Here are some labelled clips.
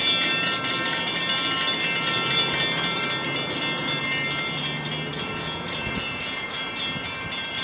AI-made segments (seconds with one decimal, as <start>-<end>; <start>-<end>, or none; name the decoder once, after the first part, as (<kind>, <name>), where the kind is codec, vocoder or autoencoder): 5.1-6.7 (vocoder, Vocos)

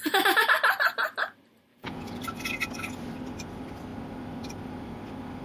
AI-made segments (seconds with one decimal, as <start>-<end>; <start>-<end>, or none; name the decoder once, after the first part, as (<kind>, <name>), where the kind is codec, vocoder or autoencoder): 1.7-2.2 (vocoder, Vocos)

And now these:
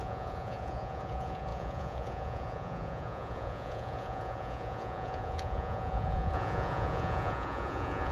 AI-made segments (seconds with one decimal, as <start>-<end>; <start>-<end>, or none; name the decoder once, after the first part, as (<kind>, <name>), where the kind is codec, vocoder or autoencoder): 0.0-8.1 (vocoder, Vocos)